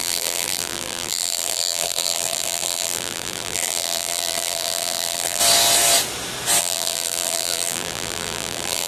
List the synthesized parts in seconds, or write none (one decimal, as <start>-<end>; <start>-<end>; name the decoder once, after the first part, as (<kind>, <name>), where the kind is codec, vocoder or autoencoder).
0.0-5.4 (vocoder, BigVGAN v2); 6.6-8.9